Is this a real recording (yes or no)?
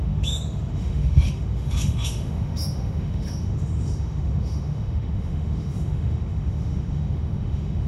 no